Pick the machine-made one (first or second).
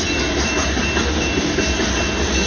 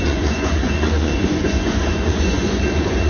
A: second